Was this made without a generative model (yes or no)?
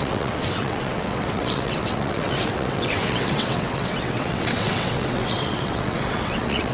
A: no